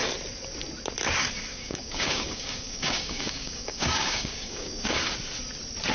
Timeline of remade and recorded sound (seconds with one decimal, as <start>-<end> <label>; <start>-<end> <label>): 0.0-1.5 recorded; 1.5-5.0 remade; 5.0-5.9 recorded